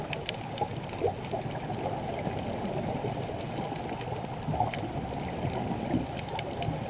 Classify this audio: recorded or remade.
recorded